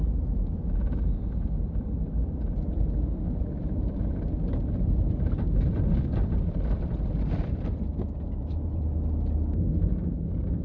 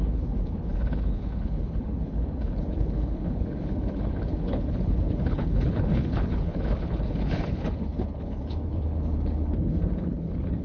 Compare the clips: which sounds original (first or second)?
first